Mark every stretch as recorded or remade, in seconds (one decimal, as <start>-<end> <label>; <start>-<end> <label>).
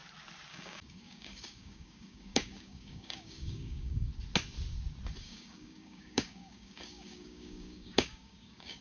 0.0-0.5 recorded; 0.5-4.1 remade; 4.1-5.2 recorded; 5.2-8.8 remade